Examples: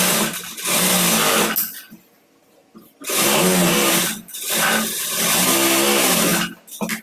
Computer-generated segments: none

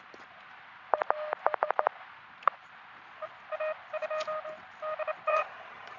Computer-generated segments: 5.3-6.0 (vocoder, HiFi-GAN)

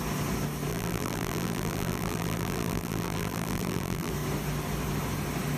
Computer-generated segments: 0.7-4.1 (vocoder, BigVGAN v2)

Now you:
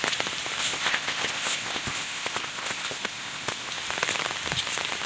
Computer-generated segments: 0.6-3.7 (codec, ZipCodec)